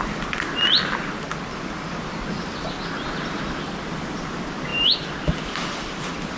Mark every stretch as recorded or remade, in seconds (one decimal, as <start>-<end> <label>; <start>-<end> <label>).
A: 0.0-6.4 recorded